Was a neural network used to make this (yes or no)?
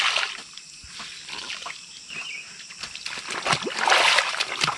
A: no